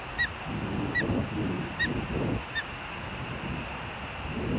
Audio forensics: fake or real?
real